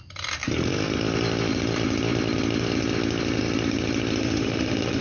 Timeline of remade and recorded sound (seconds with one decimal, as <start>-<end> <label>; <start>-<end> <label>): 0.0-4.2 recorded; 4.2-5.0 remade